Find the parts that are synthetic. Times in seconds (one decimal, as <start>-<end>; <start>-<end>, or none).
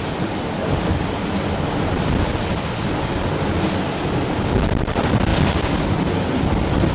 none